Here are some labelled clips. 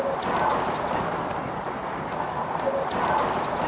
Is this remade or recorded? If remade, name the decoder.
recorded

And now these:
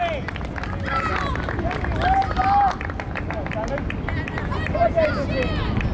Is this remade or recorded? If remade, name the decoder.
recorded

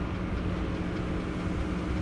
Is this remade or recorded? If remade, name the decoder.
recorded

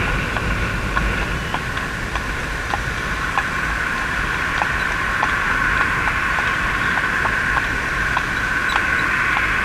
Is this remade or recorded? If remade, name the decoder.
recorded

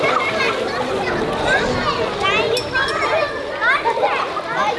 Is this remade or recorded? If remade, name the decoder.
recorded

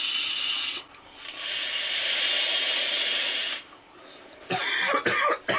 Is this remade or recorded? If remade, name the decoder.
recorded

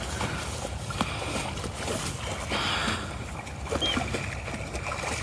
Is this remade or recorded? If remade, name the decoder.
recorded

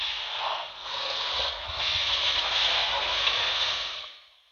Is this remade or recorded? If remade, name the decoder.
remade, codec, SNAC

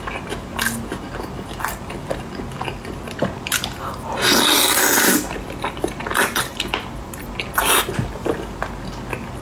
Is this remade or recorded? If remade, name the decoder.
recorded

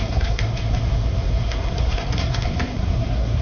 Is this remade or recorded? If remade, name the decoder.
remade, codec, SNAC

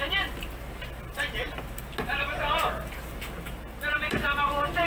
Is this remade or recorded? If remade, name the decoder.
recorded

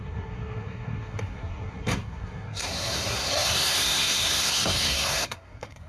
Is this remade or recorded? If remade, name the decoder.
remade, codec, SNAC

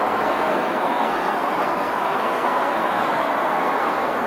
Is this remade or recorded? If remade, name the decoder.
remade, codec, SNAC